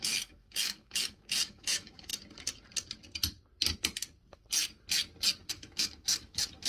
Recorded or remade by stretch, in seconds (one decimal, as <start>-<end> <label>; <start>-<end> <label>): 0.0-2.1 remade; 2.1-5.5 recorded; 5.5-6.7 remade